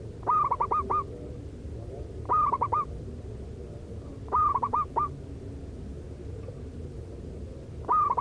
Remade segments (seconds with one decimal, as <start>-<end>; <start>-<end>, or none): none